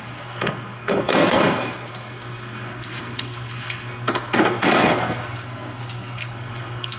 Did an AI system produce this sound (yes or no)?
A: yes